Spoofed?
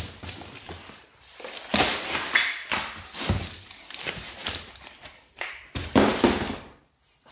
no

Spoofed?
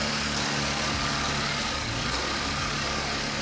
yes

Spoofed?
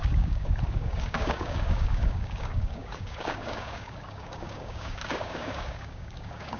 yes